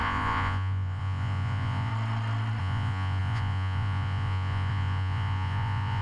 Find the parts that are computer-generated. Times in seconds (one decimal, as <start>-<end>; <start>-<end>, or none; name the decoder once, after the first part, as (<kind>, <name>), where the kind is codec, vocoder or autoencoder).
0.0-1.9 (vocoder, Vocos); 2.6-6.0

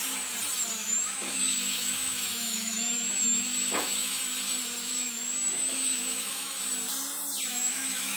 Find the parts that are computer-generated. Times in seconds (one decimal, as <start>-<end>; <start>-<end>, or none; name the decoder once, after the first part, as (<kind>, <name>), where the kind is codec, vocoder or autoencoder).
0.8-4.2 (autoencoder, DAC-VAE); 4.8-6.6; 7.5-8.2

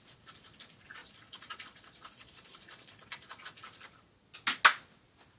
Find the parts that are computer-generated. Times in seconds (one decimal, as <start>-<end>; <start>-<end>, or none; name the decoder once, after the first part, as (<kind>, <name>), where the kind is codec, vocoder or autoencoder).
1.0-3.4 (vocoder, Vocos)